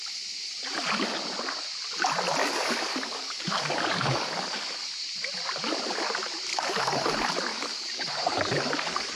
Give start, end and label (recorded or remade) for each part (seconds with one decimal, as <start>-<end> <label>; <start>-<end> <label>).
0.0-2.4 recorded; 2.4-4.9 remade; 4.9-6.5 recorded; 6.5-7.1 remade; 7.1-7.5 recorded; 7.5-9.2 remade